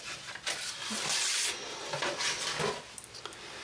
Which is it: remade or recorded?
recorded